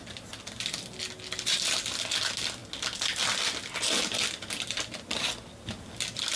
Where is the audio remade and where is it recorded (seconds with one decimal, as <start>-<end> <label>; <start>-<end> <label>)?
0.0-6.4 recorded